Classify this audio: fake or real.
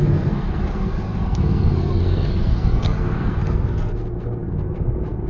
fake